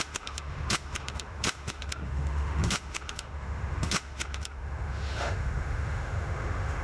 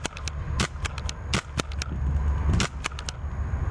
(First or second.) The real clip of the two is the second